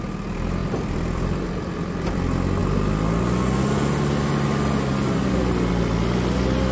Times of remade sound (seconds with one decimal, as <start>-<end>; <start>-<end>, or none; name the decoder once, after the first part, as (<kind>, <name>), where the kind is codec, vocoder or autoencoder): 0.6-2.2 (vocoder, BigVGAN v2)